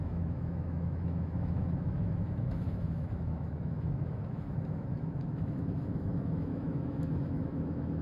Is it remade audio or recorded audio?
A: remade